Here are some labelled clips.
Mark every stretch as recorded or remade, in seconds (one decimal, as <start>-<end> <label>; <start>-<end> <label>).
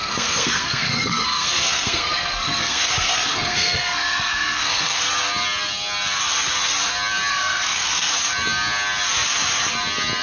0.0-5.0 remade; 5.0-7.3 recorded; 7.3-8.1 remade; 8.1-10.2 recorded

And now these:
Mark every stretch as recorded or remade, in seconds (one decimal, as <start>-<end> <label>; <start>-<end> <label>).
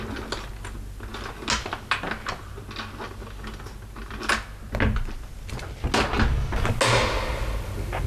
0.0-8.1 recorded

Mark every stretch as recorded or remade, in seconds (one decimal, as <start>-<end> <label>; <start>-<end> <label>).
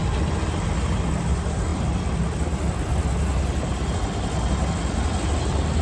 0.0-5.8 recorded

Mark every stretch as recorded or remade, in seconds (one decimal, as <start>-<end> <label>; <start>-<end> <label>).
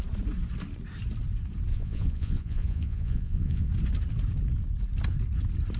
0.0-1.7 recorded; 1.7-3.7 remade; 3.7-5.8 recorded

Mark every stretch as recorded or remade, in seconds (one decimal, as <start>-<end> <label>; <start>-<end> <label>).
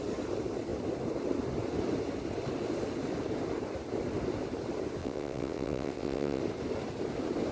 0.0-5.0 recorded; 5.0-6.4 remade; 6.4-7.5 recorded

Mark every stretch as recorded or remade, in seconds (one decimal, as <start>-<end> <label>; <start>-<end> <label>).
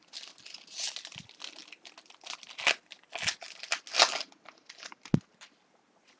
0.0-6.2 recorded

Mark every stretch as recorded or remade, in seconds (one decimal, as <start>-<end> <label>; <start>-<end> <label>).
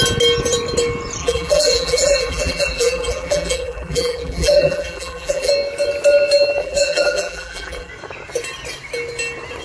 0.0-1.2 recorded; 1.2-5.5 remade; 5.5-6.6 recorded; 6.6-7.9 remade; 7.9-9.6 recorded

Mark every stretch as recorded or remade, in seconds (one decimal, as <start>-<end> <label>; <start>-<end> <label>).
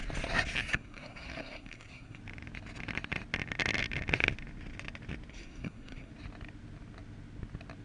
0.0-0.7 recorded; 0.7-2.2 remade; 2.2-5.3 recorded; 5.3-6.1 remade; 6.1-7.8 recorded